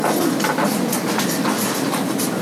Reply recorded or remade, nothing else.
recorded